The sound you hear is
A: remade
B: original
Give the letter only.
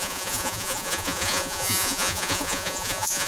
A